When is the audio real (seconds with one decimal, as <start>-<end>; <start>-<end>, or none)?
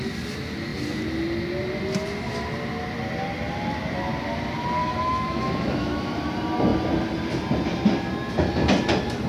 0.0-4.8; 6.3-9.3